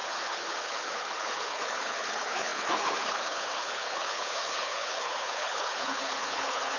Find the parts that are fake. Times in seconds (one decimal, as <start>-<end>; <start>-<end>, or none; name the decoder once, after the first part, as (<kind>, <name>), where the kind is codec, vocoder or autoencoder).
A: 0.0-6.8 (codec, HILCodec)